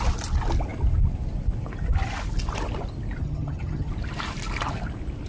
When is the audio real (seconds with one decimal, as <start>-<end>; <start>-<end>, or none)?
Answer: 0.0-3.2; 3.9-5.3

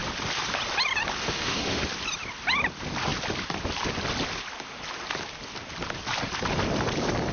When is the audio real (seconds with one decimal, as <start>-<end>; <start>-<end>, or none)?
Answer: 0.0-1.2; 1.8-7.3